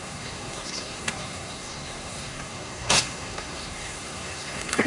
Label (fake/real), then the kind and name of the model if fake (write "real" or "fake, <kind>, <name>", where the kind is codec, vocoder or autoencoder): fake, codec, SNAC